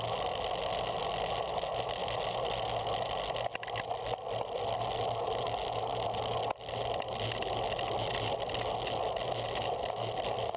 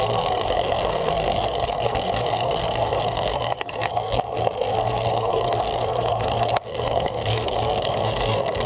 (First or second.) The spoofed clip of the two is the second